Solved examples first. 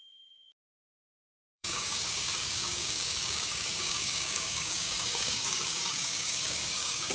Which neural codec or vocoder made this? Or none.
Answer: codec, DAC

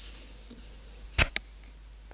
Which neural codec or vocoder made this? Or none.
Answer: none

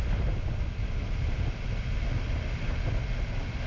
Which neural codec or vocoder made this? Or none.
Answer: none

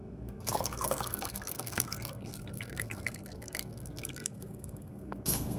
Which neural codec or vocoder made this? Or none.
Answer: codec, SNAC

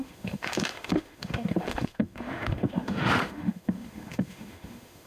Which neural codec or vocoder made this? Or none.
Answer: autoencoder, DAC-VAE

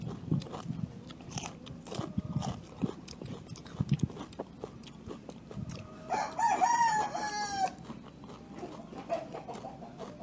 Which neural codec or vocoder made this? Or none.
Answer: none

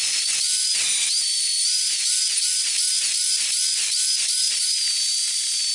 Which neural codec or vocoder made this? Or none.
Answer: none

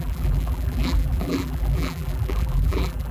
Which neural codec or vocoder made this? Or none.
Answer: vocoder, BigVGAN v2